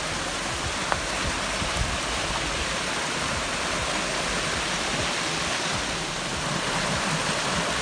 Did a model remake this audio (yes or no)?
no